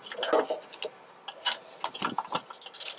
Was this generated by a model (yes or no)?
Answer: no